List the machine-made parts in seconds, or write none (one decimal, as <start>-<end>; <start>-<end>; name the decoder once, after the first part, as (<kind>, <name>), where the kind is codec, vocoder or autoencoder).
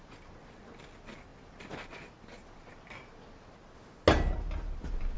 none